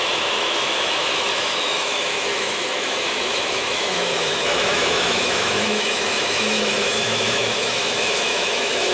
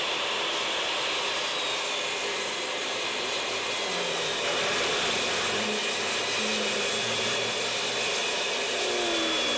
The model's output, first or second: first